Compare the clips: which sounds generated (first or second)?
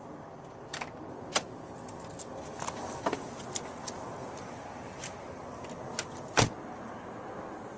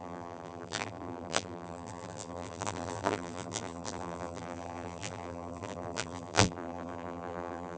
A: second